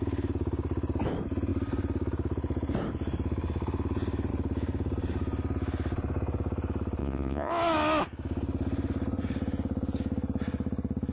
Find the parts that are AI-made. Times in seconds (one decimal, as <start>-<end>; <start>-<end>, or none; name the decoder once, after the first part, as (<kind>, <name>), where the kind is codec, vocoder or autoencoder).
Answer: 7.0-7.5 (vocoder, Vocos)